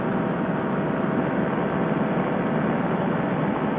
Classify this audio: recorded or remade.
recorded